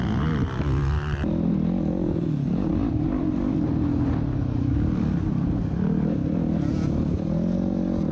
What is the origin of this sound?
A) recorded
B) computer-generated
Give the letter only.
A